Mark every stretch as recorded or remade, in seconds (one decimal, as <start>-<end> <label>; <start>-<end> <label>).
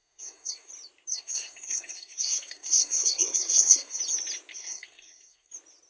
0.0-0.7 remade; 0.7-1.1 recorded; 1.1-4.0 remade; 4.0-4.5 recorded; 4.5-5.5 remade; 5.5-5.9 recorded